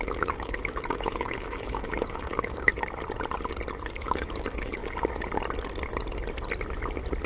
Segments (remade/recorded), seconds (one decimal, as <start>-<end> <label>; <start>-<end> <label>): 0.0-2.7 remade; 2.7-4.0 recorded; 4.0-4.8 remade; 4.8-7.3 recorded